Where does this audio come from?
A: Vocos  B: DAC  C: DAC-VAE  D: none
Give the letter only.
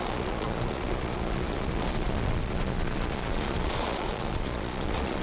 A